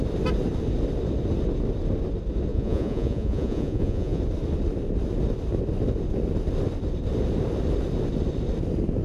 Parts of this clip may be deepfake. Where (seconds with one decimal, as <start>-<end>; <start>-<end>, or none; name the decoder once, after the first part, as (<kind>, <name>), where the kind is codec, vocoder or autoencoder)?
2.5-4.2 (vocoder, Vocos)

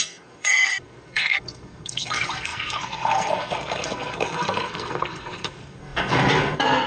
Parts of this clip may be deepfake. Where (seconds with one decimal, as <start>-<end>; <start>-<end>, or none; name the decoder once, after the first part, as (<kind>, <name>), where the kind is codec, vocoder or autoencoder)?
0.0-6.9 (codec, SNAC)